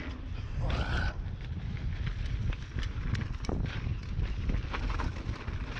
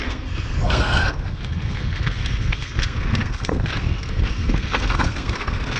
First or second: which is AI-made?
second